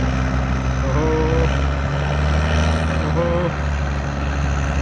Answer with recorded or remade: recorded